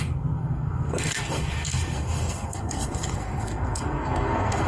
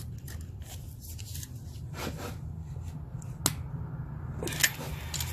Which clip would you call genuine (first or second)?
second